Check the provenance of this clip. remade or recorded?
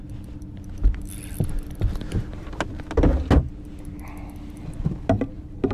recorded